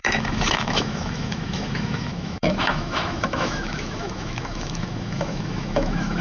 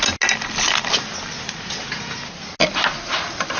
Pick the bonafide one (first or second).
second